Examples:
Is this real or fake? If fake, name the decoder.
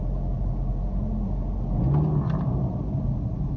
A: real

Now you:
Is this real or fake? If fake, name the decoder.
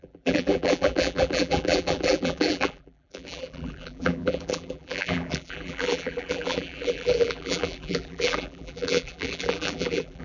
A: fake, vocoder, BigVGAN v2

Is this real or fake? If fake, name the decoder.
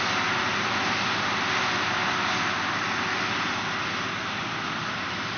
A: real